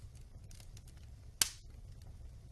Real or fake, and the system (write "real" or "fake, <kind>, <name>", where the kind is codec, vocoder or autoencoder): real